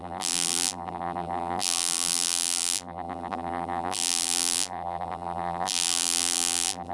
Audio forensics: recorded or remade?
remade